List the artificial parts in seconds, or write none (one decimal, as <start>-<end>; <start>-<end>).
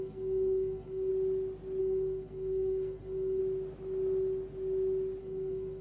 0.0-1.1; 1.8-3.4; 5.2-5.8